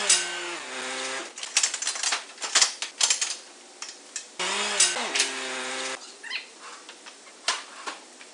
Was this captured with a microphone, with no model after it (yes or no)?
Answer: yes